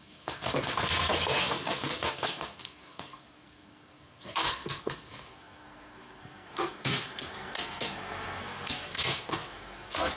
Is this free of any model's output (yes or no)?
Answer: no